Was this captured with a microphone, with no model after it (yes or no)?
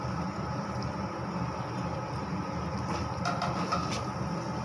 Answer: yes